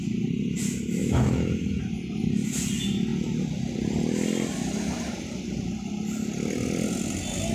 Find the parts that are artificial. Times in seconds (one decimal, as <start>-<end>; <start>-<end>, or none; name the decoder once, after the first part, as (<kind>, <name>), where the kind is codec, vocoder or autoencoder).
1.0-1.8 (autoencoder, DAC-VAE)